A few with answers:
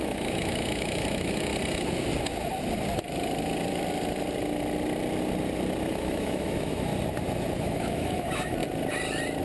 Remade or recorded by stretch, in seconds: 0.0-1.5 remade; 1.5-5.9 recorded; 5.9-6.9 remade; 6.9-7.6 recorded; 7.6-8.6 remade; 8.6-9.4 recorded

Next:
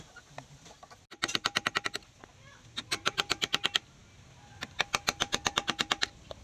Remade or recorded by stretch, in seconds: 0.0-6.4 recorded

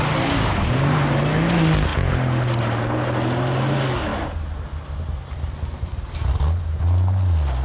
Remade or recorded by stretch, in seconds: 0.0-7.6 recorded

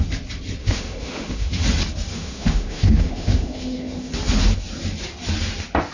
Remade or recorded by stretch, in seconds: 0.0-0.6 recorded; 0.6-1.6 remade; 1.6-2.1 recorded; 2.1-4.1 remade; 4.1-5.9 recorded

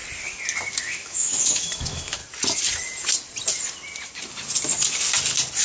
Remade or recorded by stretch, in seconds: 0.0-0.8 recorded; 0.8-2.2 remade; 2.2-5.6 recorded